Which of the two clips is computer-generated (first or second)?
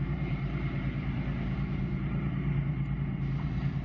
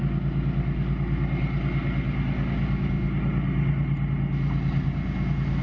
first